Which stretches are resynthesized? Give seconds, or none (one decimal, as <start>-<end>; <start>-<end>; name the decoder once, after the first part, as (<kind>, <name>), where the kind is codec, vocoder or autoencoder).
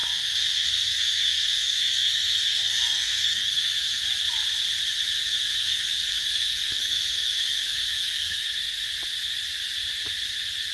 0.0-4.0 (codec, SNAC); 5.6-8.6